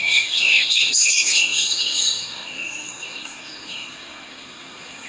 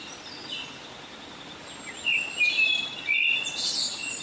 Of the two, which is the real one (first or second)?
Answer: second